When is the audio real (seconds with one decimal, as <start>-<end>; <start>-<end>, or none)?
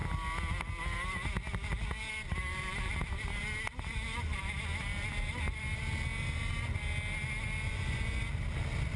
0.0-7.7; 8.2-9.0